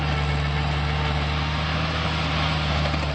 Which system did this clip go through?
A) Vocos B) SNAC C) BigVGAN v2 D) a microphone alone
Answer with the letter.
D